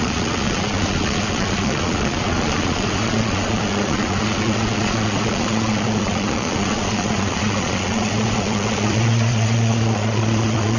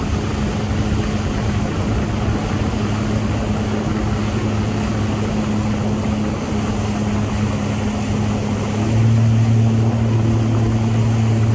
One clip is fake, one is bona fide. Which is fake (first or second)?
first